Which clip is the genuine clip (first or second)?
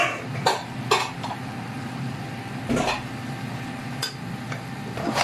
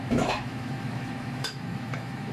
first